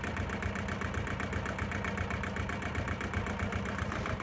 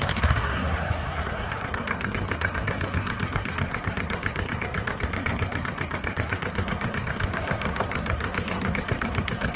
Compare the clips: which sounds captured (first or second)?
first